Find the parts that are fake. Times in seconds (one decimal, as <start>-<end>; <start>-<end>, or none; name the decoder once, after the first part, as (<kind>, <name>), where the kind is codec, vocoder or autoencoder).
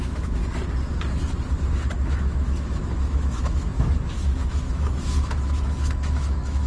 0.0-0.4 (autoencoder, DAC-VAE); 1.9-6.7